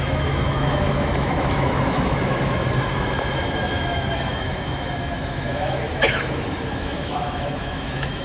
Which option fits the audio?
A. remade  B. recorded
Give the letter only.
A